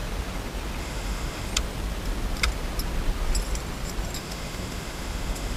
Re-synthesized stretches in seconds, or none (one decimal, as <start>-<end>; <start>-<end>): 0.8-1.5; 4.2-5.6